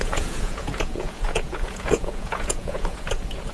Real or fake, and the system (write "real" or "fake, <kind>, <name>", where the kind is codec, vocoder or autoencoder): fake, vocoder, Vocos